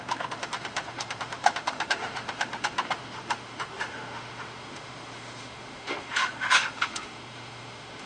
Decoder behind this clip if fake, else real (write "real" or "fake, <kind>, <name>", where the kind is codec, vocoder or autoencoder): fake, autoencoder, DAC-VAE